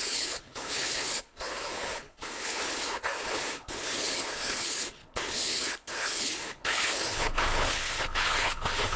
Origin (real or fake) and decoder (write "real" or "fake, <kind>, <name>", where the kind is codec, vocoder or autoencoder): fake, codec, HILCodec